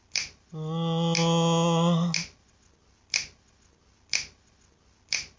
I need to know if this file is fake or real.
real